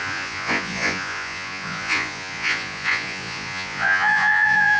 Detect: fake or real fake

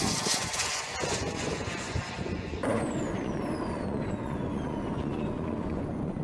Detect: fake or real fake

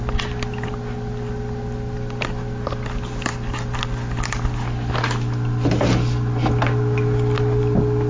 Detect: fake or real real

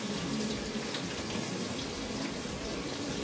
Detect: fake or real real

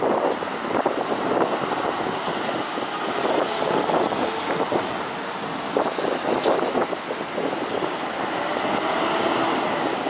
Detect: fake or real real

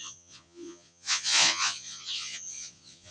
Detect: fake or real fake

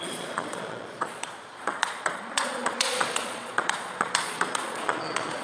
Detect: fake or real fake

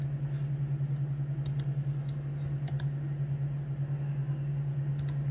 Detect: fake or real real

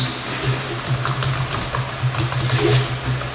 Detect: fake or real real